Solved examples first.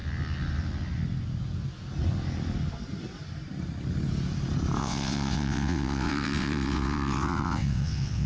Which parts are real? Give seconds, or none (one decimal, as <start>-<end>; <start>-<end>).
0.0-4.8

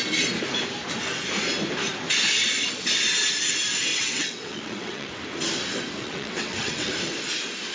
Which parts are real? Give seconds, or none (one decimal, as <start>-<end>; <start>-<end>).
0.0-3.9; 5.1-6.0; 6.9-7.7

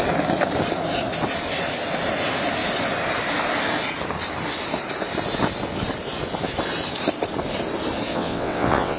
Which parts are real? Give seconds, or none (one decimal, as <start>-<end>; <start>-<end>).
0.0-8.1